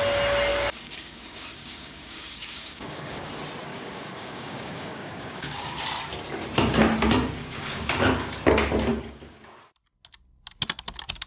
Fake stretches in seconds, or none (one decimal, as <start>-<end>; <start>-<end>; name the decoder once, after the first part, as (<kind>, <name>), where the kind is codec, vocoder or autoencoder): 0.5-3.3 (codec, DAC); 3.7-5.8; 7.4-8.3; 8.9-9.5